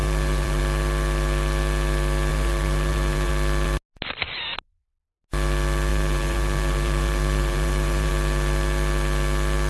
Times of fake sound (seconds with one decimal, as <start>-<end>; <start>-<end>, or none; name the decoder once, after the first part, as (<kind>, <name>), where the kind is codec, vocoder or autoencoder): 0.0-0.6 (vocoder, BigVGAN v2); 2.3-3.3; 5.9-8.1